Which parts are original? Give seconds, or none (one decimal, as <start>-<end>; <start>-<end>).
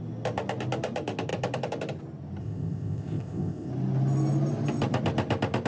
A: 0.0-2.4; 3.7-5.7